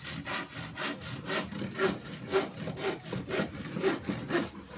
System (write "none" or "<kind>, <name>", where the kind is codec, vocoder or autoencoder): none